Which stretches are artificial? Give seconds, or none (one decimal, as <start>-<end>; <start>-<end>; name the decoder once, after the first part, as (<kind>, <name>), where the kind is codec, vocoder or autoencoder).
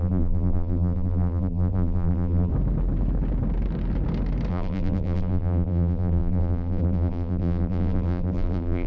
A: 0.0-2.5 (vocoder, BigVGAN v2); 4.5-8.9